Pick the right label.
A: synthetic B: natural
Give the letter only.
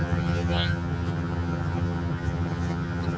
A